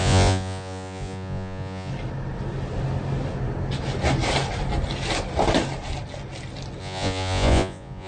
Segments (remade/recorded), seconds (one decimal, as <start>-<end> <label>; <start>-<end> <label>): 0.0-1.9 remade; 1.9-6.8 recorded; 6.8-8.1 remade